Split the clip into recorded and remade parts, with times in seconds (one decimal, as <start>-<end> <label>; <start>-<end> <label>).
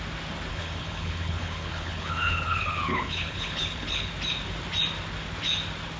0.0-0.5 recorded; 0.5-4.1 remade; 4.1-6.0 recorded